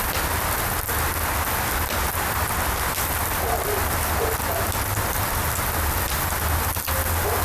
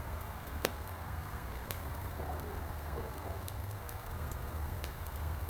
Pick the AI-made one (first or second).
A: second